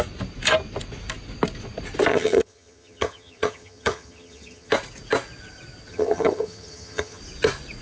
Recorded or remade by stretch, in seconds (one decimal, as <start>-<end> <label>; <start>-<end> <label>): 0.0-2.1 recorded; 2.1-4.7 remade; 4.7-5.9 recorded; 5.9-7.2 remade; 7.2-7.8 recorded